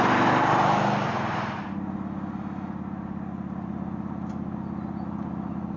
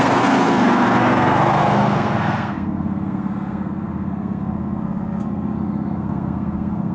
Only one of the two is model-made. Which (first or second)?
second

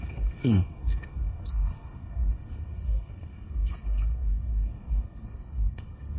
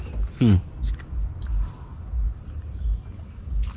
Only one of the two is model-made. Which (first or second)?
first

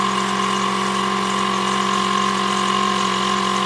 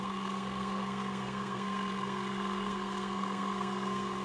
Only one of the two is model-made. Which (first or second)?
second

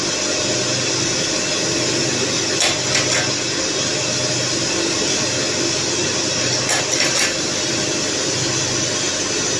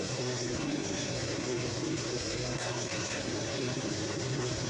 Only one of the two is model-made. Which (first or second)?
second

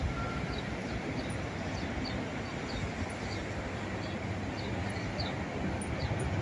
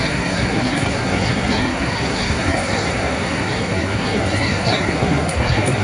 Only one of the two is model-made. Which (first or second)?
second